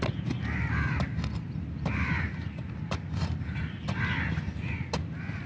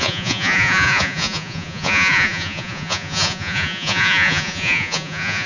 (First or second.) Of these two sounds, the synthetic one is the second